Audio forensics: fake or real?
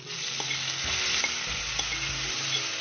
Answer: real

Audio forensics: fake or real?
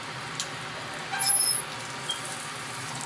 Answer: real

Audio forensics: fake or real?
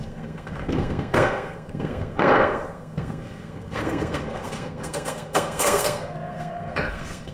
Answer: fake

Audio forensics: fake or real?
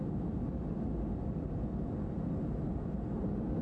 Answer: real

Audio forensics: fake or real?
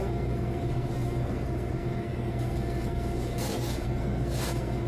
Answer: fake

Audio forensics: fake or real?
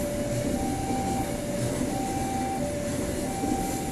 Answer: real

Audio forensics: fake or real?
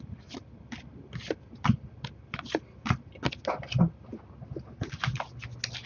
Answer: real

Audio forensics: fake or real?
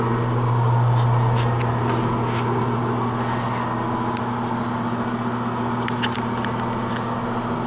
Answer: real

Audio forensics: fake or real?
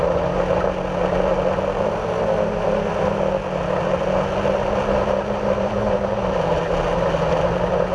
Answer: real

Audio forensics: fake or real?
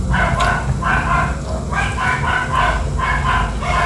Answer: real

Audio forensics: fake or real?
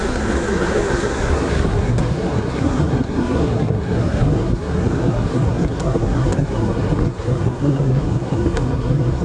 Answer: fake